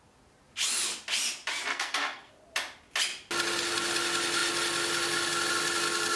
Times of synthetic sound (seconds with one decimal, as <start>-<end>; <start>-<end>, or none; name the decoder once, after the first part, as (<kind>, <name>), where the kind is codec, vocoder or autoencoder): 1.7-2.3 (codec, SNAC)